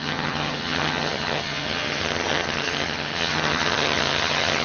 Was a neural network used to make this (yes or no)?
yes